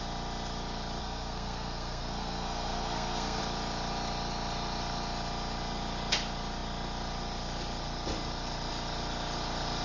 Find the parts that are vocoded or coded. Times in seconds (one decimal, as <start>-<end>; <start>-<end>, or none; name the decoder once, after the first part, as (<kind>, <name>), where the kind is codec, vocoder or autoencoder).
1.0-3.4 (codec, SNAC)